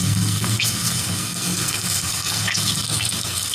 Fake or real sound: fake